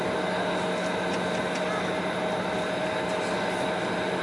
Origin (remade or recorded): recorded